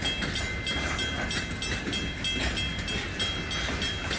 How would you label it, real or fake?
real